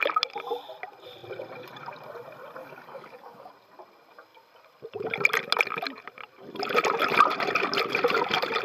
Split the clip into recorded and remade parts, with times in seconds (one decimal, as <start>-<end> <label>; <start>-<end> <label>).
0.0-2.6 recorded; 2.6-3.5 remade; 3.5-8.6 recorded